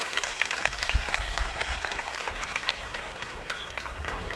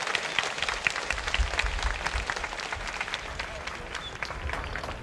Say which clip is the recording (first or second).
second